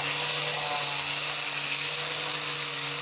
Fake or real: real